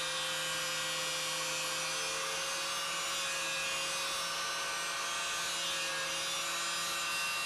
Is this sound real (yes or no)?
yes